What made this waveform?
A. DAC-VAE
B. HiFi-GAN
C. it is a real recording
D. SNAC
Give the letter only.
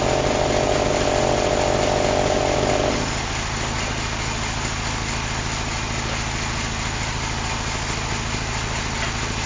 C